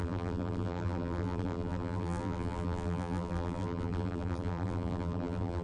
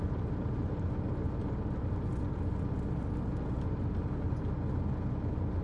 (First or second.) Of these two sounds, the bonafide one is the second